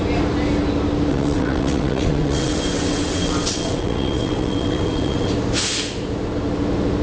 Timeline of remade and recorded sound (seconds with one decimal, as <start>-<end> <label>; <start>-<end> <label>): 0.0-1.1 recorded; 1.1-5.3 remade; 5.3-7.0 recorded